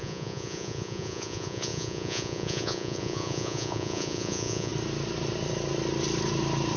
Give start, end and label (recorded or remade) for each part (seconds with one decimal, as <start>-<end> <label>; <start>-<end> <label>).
0.0-4.7 remade; 4.7-6.8 recorded